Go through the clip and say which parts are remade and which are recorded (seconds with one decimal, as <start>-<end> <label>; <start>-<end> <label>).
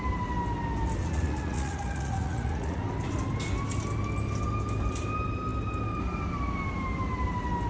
0.0-1.0 recorded; 1.0-2.8 remade; 2.8-7.7 recorded